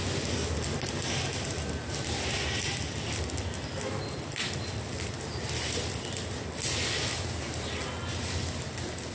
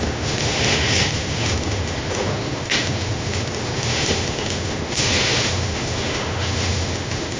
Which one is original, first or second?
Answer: first